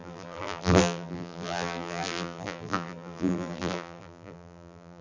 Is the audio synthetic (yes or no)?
yes